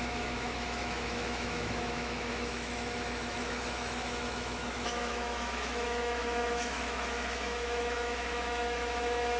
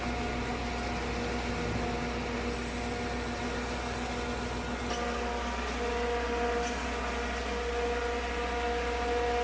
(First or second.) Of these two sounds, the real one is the second